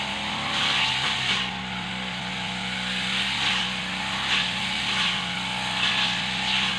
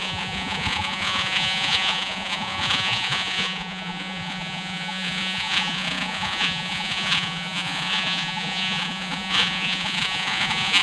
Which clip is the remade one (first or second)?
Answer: second